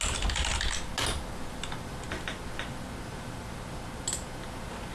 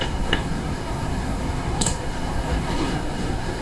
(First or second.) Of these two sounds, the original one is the first